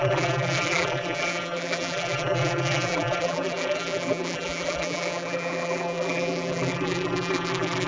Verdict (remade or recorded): remade